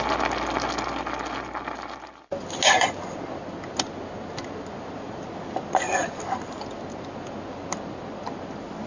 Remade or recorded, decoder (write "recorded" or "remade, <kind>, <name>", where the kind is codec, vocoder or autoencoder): recorded